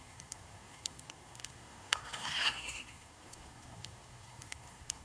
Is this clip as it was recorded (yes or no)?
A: no